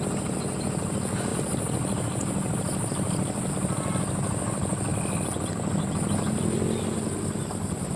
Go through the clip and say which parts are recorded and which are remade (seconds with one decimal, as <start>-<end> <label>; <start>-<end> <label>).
0.0-1.3 recorded; 1.3-3.5 remade; 3.5-8.0 recorded

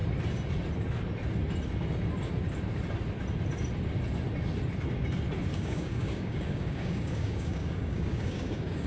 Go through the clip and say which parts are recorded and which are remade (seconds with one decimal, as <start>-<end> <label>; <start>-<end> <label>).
0.0-5.5 recorded; 5.5-8.9 remade

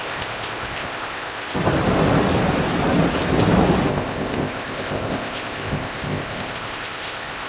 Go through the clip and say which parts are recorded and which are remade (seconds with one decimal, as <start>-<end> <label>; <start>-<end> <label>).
0.0-1.6 remade; 1.6-3.9 recorded; 3.9-7.5 remade